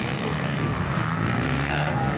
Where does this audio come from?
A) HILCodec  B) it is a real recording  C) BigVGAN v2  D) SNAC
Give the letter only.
D